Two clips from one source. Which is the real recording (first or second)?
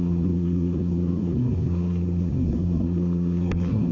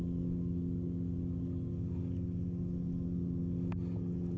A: second